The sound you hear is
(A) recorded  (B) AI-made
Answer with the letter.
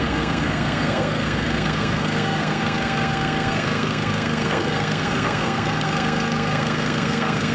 B